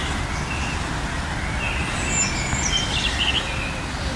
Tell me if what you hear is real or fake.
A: real